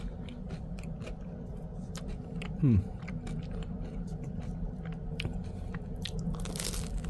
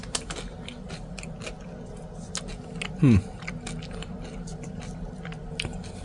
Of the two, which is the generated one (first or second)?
first